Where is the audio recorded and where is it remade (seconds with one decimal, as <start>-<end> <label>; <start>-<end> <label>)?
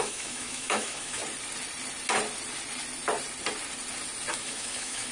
0.0-1.2 remade; 1.2-4.3 recorded; 4.3-5.1 remade